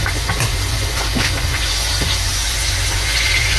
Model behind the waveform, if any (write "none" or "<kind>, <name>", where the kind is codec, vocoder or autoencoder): vocoder, Vocos